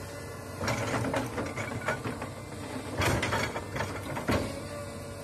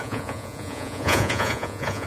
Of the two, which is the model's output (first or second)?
second